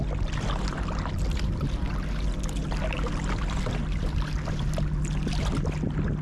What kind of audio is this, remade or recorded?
recorded